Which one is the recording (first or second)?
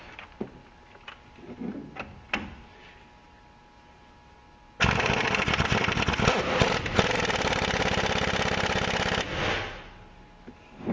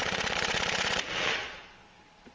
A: first